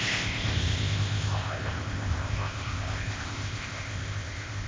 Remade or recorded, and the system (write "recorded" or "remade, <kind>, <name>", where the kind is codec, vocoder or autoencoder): remade, codec, ZipCodec